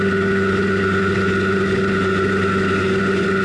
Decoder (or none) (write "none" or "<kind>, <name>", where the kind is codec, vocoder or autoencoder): none